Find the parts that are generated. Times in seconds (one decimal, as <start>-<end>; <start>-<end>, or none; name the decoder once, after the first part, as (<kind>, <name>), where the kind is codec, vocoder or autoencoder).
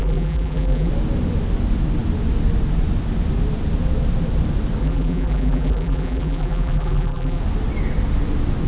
0.0-0.9 (vocoder, BigVGAN v2); 4.8-7.4